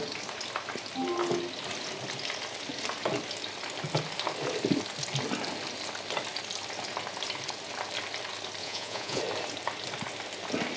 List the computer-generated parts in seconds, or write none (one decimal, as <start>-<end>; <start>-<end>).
8.6-9.2